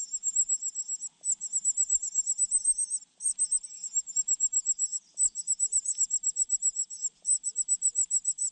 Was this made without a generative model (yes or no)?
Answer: yes